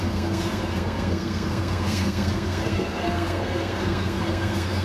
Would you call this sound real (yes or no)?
no